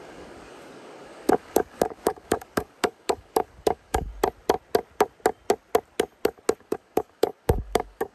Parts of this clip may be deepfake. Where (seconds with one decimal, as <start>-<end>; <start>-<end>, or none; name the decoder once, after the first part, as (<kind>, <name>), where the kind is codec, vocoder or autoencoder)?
0.0-4.1 (codec, DAC); 6.6-8.1